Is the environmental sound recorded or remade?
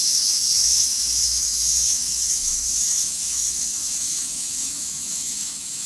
remade